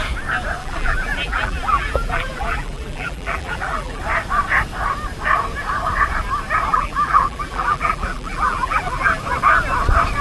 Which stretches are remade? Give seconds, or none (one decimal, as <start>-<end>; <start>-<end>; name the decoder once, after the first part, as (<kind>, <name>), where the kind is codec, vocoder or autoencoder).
0.6-4.0 (vocoder, BigVGAN v2); 6.7-9.2